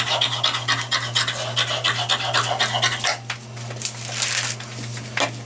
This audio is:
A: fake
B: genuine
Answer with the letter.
B